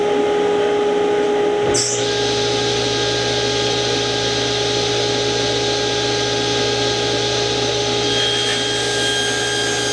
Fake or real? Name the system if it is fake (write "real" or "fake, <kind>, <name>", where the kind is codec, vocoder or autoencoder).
real